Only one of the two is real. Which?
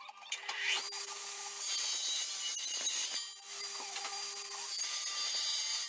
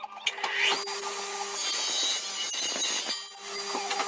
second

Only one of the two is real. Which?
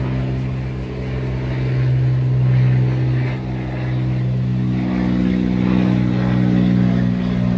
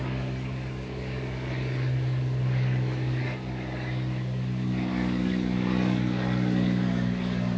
first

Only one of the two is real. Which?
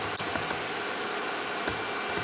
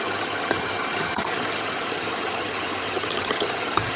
first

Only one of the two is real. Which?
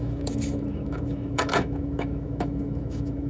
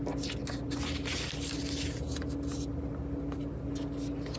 second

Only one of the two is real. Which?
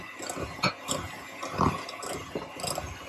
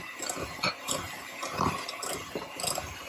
first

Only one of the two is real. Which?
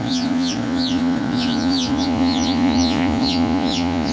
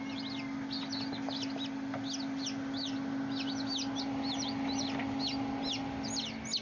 second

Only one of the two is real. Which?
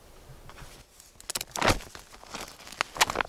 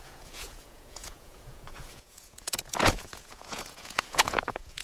first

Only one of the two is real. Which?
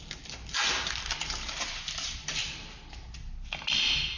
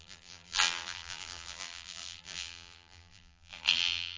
first